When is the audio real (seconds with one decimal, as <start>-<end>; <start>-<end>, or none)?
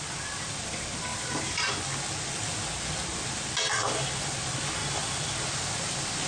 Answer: 0.0-1.1; 1.7-6.3